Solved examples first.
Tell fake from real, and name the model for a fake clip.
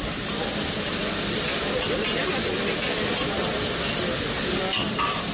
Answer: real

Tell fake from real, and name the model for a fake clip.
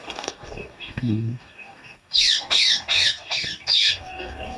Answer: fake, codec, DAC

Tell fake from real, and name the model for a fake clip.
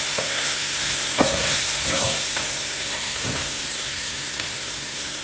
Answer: fake, codec, SNAC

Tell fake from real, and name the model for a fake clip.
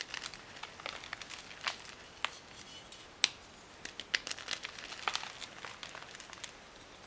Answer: real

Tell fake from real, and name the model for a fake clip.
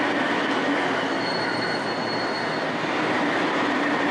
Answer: real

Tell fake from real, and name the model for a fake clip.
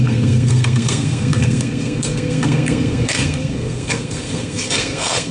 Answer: fake, codec, SNAC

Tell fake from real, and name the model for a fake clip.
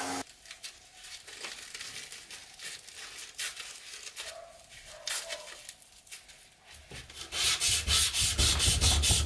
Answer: real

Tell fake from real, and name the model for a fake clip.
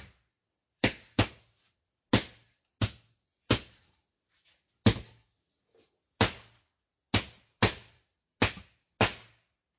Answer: real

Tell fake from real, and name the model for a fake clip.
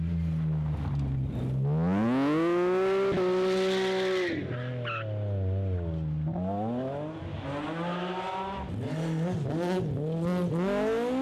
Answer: real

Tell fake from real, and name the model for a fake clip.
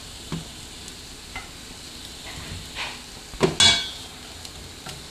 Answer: real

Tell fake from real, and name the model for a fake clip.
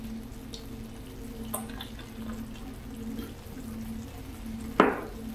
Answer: real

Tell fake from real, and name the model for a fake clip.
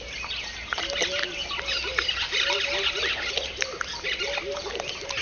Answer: real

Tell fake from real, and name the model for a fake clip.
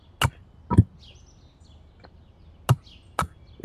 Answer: real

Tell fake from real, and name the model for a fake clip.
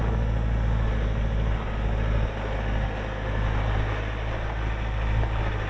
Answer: real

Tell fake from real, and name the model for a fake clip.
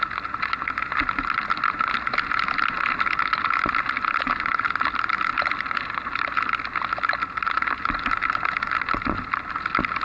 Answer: real